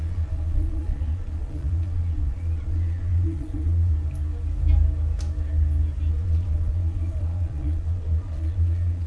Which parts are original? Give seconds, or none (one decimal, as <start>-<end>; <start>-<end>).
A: 3.9-6.1